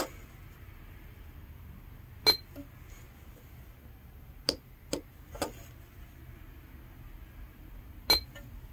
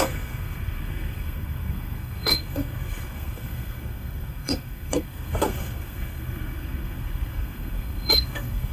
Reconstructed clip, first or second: second